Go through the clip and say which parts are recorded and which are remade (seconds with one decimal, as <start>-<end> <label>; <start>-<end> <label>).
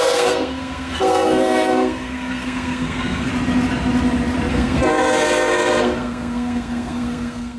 0.0-3.3 remade; 3.3-4.5 recorded; 4.5-7.6 remade